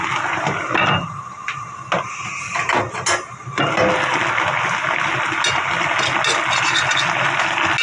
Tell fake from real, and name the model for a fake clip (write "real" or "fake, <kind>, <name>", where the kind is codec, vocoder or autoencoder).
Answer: real